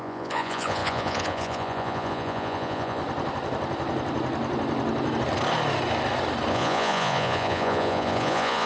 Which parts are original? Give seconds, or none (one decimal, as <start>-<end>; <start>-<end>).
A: 3.0-6.5